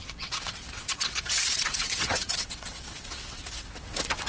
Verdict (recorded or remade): remade